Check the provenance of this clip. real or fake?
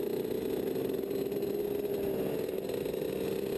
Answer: real